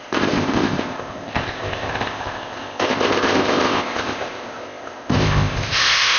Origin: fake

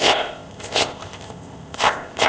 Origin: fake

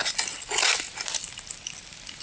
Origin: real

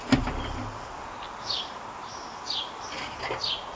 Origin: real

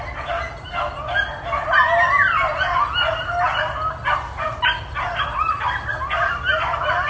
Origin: real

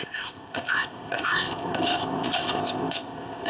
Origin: fake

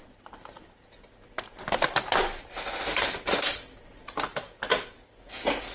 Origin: real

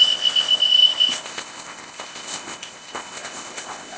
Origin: fake